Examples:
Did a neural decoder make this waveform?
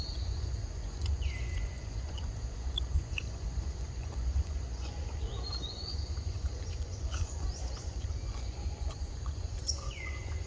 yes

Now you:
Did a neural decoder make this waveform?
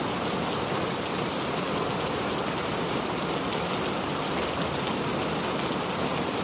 no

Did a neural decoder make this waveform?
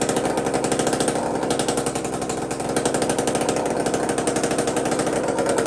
no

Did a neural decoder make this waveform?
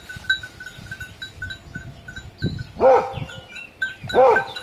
no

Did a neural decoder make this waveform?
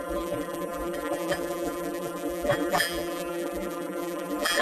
yes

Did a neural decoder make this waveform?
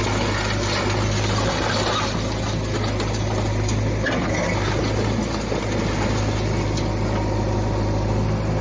no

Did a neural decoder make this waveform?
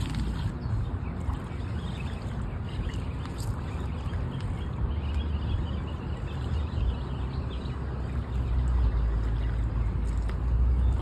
no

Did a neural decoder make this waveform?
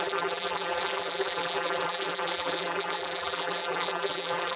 yes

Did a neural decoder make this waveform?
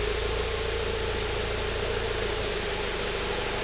no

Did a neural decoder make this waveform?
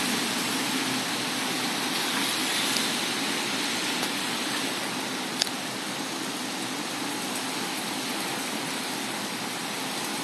yes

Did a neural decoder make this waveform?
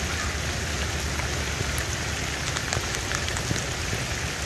no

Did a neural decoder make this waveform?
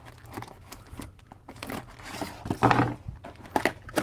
no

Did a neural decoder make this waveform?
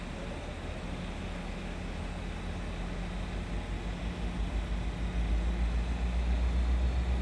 no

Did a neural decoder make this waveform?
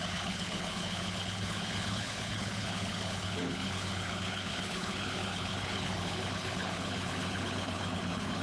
yes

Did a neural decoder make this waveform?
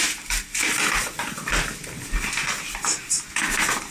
no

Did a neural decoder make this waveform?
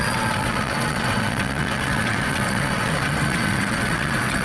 yes